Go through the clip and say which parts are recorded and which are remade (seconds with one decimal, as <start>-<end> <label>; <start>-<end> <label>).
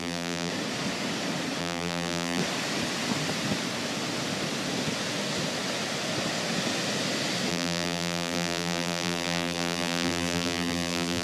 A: 0.0-0.5 remade; 0.5-1.6 recorded; 1.6-2.4 remade; 2.4-7.5 recorded; 7.5-11.2 remade